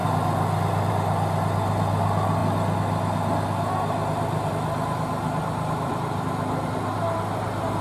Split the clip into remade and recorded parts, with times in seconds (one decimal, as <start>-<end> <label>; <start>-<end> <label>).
0.0-7.8 recorded